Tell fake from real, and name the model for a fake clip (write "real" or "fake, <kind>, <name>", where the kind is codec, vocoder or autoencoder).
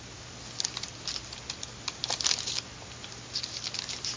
real